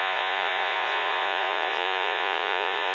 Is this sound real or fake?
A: fake